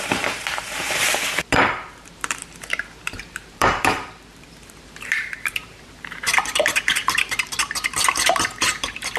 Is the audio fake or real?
fake